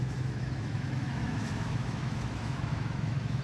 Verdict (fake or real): fake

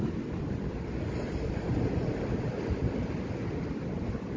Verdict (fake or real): real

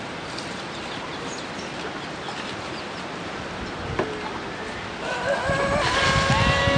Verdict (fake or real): real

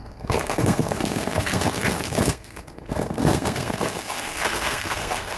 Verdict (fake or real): fake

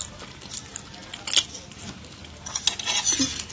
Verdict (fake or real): real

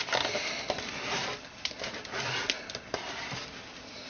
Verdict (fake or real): real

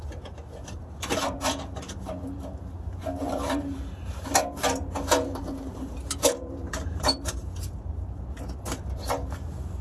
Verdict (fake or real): fake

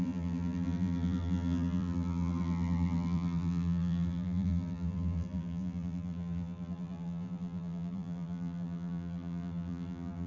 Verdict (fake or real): fake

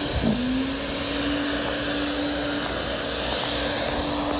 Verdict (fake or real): real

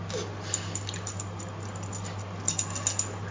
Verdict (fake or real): real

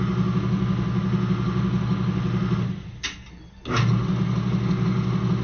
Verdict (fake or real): real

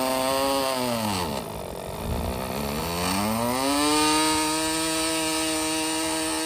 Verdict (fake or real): real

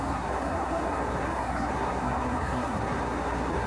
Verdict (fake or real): fake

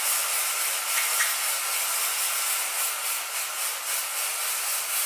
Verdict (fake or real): real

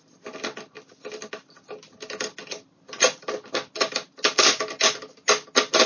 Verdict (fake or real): real